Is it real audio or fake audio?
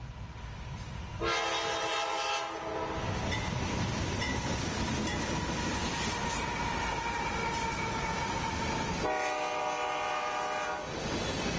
real